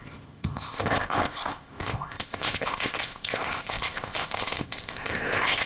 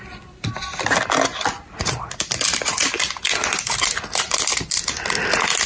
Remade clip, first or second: first